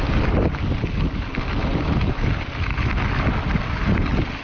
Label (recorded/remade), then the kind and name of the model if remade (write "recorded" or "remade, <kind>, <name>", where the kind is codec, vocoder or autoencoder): recorded